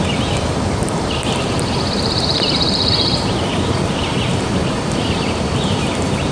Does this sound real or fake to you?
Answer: fake